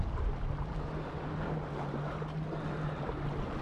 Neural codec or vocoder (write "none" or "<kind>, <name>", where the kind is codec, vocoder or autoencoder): none